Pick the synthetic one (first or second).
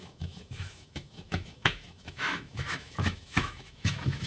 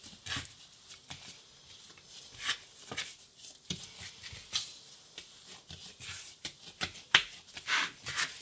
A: first